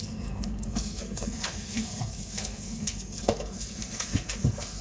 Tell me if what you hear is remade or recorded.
remade